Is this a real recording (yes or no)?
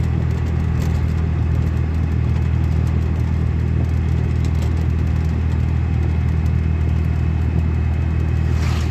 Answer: yes